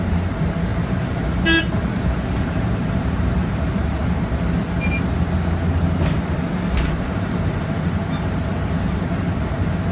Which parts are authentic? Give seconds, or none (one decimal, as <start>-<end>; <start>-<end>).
4.0-6.9